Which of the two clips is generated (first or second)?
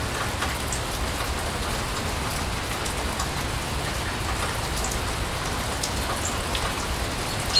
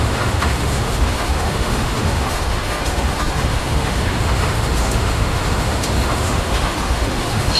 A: second